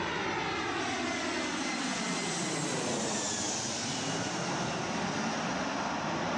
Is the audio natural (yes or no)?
yes